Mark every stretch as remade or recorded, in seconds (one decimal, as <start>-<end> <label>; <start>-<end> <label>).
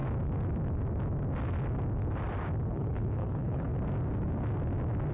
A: 0.0-2.7 recorded; 2.7-3.7 remade; 3.7-5.1 recorded